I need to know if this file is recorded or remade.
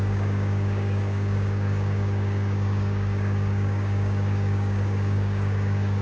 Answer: remade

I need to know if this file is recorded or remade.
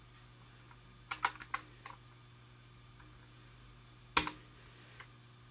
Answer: recorded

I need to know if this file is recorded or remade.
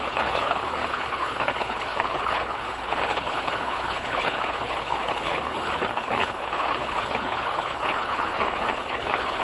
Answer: remade